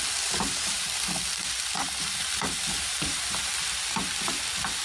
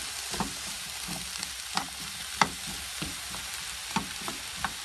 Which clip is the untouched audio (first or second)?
second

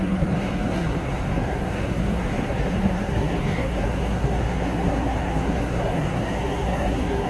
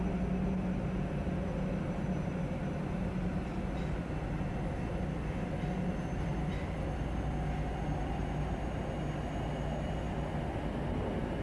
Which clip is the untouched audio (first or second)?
second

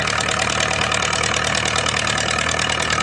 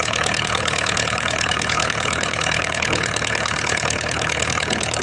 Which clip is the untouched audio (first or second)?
first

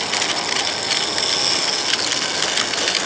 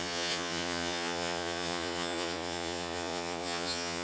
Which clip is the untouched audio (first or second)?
first